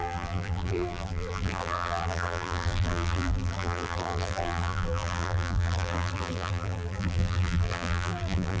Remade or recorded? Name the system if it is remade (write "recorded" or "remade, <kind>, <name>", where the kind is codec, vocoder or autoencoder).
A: remade, vocoder, BigVGAN v2